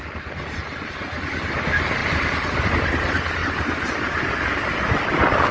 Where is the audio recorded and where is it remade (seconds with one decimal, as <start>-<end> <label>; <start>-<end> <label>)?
0.0-2.0 recorded; 2.0-2.7 remade; 2.7-5.5 recorded